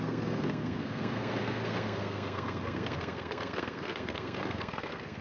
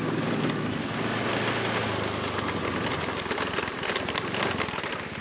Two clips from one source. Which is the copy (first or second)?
first